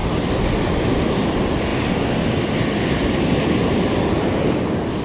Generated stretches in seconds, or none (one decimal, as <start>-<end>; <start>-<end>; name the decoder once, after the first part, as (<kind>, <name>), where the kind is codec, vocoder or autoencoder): none

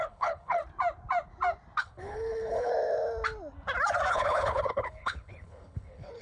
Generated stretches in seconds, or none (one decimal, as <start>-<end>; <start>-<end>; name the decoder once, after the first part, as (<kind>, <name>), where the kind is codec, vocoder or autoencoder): 0.0-0.6 (codec, HILCodec); 1.8-2.7; 4.1-6.2

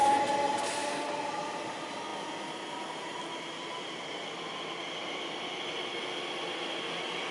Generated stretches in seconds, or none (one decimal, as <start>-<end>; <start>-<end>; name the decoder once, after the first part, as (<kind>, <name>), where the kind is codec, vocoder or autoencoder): none

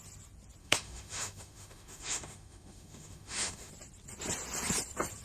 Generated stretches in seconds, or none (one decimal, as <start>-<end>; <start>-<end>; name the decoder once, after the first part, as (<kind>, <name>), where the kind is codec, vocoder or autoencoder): 0.6-3.7 (autoencoder, DAC-VAE)

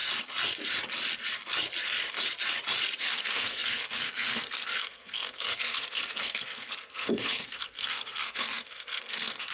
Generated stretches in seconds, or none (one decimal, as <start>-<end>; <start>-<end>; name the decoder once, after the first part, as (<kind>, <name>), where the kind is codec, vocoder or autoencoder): 3.0-9.5 (codec, SNAC)

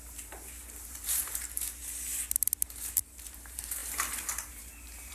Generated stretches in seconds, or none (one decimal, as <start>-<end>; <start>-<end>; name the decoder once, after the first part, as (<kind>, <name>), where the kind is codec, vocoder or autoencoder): 0.0-1.8 (vocoder, BigVGAN v2); 2.7-5.1

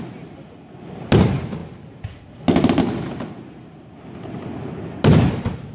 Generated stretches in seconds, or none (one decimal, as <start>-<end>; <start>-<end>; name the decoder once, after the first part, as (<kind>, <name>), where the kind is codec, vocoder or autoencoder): none